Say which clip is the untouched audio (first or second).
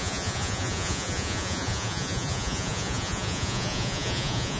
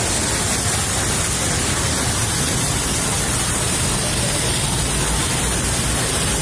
second